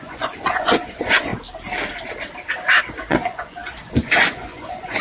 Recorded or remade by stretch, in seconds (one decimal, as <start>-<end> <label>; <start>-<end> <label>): 0.0-1.3 remade; 1.3-3.1 recorded; 3.1-5.0 remade